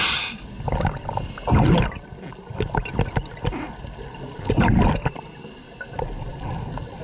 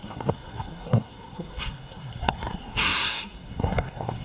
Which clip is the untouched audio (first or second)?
first